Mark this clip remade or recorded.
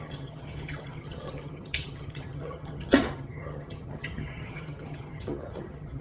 remade